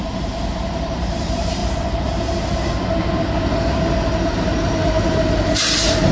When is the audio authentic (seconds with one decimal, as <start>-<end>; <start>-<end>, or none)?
1.6-4.3